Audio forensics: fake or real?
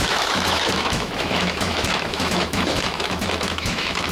fake